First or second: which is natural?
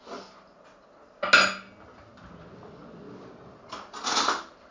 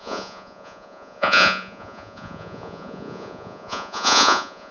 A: first